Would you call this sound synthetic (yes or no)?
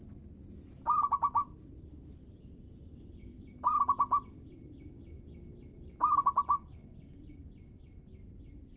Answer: no